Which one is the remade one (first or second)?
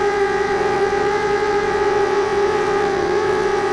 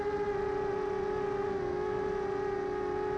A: first